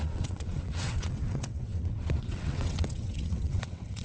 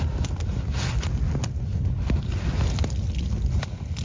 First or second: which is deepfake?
first